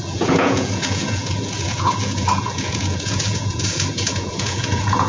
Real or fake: fake